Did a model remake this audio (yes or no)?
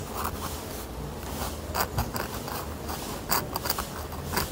no